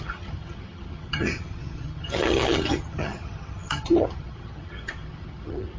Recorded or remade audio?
remade